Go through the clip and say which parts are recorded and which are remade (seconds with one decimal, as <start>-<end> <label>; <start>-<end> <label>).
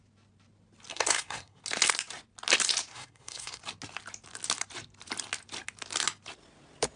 0.0-0.9 recorded; 0.9-1.6 remade; 1.6-2.9 recorded; 2.9-3.6 remade; 3.6-7.0 recorded